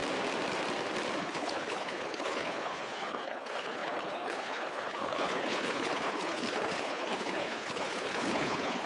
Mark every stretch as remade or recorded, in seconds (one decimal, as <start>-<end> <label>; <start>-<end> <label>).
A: 0.0-1.2 recorded; 1.2-8.9 remade